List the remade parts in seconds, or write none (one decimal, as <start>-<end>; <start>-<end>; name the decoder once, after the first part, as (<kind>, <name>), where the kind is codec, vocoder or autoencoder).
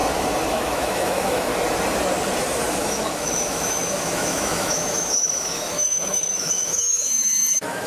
0.5-1.5 (autoencoder, DAC-VAE); 2.8-7.9